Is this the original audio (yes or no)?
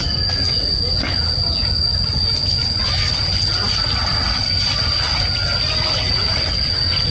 yes